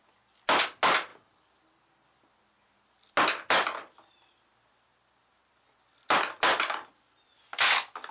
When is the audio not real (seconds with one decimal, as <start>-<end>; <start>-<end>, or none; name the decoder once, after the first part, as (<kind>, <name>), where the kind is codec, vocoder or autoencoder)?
none